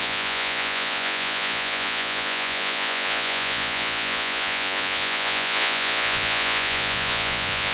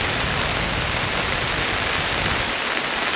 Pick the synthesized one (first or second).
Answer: first